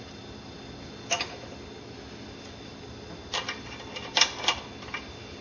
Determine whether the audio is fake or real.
real